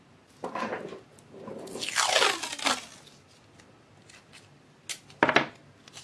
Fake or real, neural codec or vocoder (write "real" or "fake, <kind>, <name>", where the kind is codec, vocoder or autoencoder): real